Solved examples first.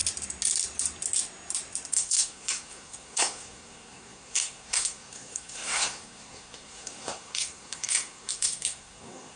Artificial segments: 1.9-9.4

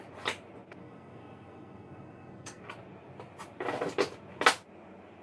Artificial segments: 0.8-2.6

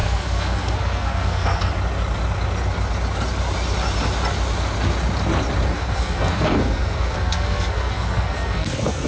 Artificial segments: 0.0-1.7; 5.7-9.1

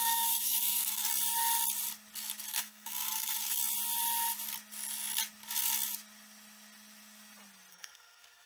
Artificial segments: 0.0-1.1; 2.5-3.6; 7.7-8.5

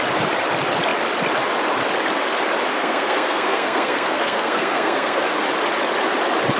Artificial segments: 2.7-5.3

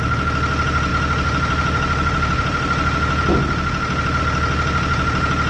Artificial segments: none

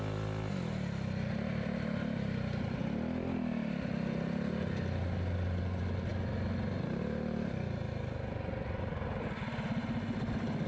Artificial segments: none